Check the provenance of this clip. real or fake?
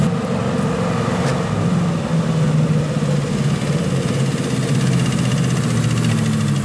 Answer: real